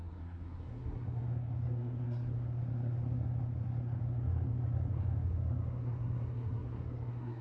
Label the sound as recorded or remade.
remade